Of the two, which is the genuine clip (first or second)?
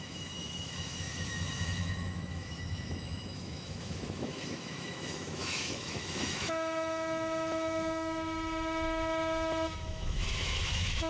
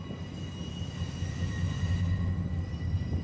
second